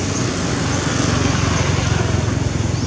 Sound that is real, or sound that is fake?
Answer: real